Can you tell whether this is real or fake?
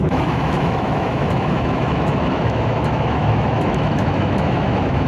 fake